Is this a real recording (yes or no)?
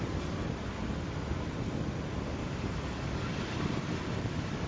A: yes